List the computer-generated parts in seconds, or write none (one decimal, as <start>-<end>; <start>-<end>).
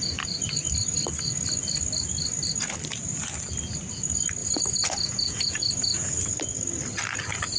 4.4-6.3